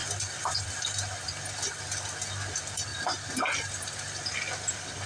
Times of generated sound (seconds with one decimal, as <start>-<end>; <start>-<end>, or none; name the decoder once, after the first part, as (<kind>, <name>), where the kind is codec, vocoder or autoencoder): none